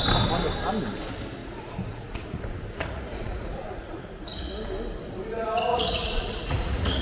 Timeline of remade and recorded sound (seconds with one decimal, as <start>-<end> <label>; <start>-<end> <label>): 0.0-1.4 recorded; 1.4-4.5 remade; 4.5-5.7 recorded; 5.7-7.0 remade